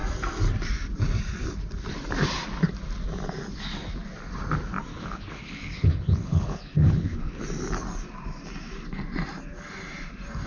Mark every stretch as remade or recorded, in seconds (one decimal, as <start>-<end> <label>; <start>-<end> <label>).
0.0-4.9 recorded; 4.9-7.4 remade; 7.4-10.5 recorded